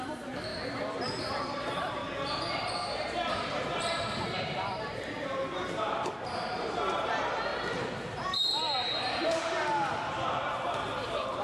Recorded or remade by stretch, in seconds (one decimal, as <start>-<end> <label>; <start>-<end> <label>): 0.0-2.0 remade; 2.0-2.5 recorded; 2.5-11.4 remade